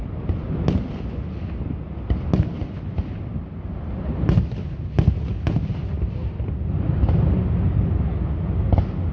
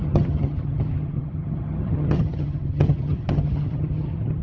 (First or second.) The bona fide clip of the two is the first